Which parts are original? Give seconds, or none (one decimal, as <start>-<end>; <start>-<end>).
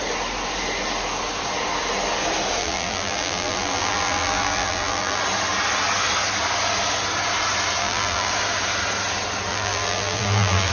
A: 0.0-2.6; 5.2-7.8; 8.3-9.5